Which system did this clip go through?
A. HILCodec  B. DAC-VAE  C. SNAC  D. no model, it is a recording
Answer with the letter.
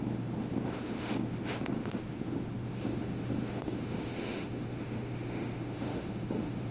B